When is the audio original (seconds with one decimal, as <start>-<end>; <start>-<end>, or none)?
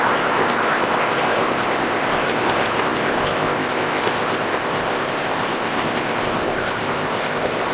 none